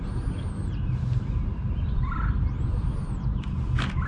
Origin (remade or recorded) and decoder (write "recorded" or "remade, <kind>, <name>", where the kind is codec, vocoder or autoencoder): recorded